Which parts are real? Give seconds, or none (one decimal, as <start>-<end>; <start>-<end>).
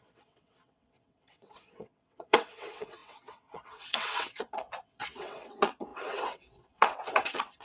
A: none